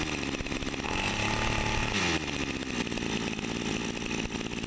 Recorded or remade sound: recorded